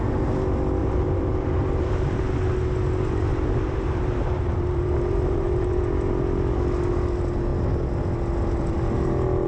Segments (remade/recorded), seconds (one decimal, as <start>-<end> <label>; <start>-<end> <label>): 0.0-0.8 recorded; 0.8-2.2 remade; 2.2-3.3 recorded; 3.3-5.8 remade; 5.8-9.5 recorded